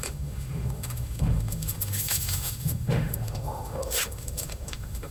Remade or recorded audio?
remade